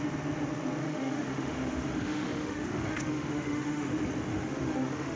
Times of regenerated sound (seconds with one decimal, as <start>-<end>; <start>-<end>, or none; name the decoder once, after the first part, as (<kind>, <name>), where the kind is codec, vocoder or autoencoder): 0.8-3.9 (autoencoder, DAC-VAE); 4.3-5.2